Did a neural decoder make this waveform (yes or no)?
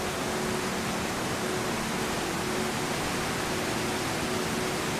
no